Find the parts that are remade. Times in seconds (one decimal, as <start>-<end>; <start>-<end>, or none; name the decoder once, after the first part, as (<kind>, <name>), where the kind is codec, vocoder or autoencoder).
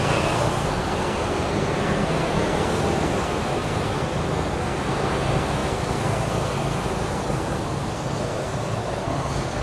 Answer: 0.0-9.6 (codec, SNAC)